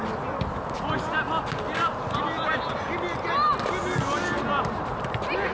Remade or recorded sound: recorded